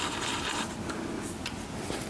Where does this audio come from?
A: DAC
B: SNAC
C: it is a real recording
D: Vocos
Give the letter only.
C